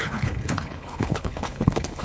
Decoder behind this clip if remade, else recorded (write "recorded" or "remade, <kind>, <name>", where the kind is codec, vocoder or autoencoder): remade, codec, HILCodec